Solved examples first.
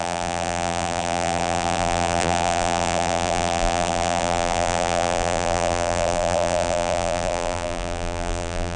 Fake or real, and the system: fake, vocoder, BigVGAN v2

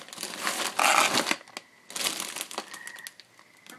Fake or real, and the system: real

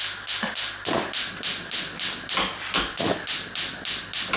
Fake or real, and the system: real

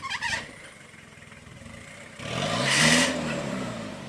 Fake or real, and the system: fake, vocoder, BigVGAN v2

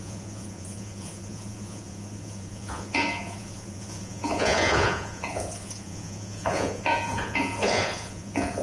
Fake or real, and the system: fake, vocoder, Vocos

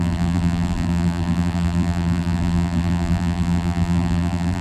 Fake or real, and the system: fake, vocoder, BigVGAN v2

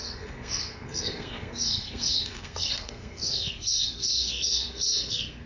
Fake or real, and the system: fake, codec, SNAC